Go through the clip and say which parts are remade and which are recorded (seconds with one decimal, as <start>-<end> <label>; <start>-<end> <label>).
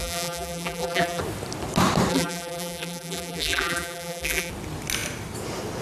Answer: 0.0-1.2 remade; 1.2-2.1 recorded; 2.1-4.5 remade; 4.5-5.8 recorded